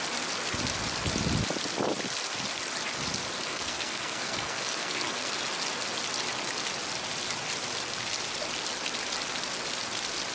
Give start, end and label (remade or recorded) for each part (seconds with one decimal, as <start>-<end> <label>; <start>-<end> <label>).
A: 0.0-3.5 recorded; 3.5-5.3 remade; 5.3-10.3 recorded